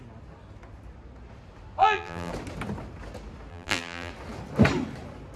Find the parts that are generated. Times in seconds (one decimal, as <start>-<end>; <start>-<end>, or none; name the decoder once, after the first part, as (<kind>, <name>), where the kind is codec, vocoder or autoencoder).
1.8-2.3 (vocoder, BigVGAN v2); 3.5-4.1